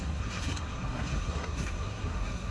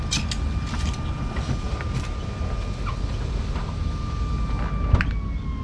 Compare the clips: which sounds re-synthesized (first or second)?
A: first